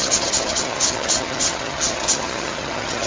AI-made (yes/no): yes